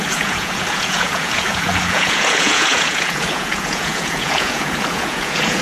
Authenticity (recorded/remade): remade